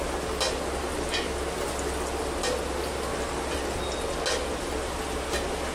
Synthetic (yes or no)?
no